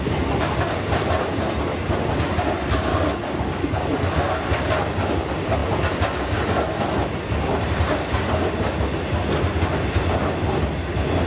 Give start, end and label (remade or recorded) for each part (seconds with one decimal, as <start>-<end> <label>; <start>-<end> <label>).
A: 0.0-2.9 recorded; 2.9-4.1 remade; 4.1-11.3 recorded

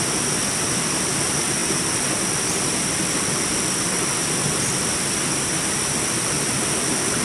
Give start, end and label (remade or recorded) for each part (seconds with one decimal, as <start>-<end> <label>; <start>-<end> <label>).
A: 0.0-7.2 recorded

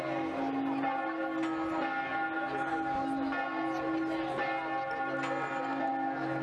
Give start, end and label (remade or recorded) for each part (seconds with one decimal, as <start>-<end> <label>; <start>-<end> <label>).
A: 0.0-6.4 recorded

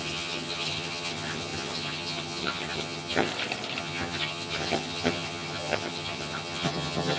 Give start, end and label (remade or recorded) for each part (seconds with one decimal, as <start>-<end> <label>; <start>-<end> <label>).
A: 0.0-3.3 remade; 3.3-3.8 recorded; 3.8-7.2 remade